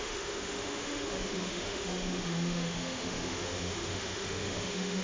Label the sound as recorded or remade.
remade